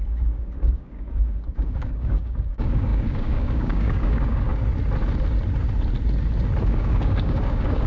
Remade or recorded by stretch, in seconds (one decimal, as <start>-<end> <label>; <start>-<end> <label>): 0.0-4.5 remade; 4.5-6.6 recorded; 6.6-7.9 remade